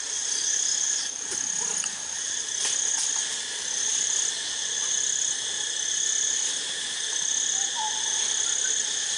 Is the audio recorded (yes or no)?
yes